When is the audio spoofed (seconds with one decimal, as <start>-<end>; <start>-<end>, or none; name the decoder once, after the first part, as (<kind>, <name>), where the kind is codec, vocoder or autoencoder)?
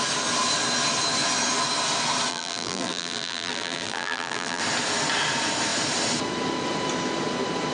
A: 2.3-4.6 (vocoder, BigVGAN v2)